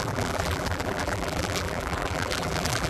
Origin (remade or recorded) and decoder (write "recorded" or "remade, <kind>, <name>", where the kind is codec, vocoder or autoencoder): remade, vocoder, BigVGAN v2